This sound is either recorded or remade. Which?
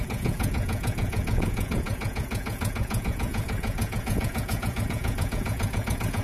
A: remade